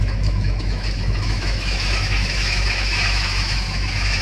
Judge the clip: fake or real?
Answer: fake